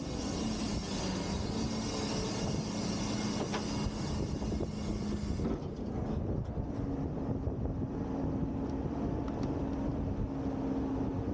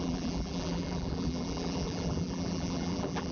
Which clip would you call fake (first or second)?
second